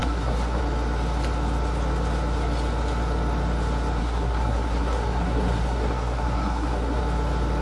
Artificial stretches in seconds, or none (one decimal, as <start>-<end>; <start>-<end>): 0.0-0.6; 4.0-7.0